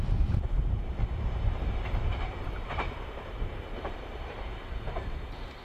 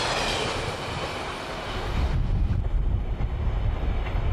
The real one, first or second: second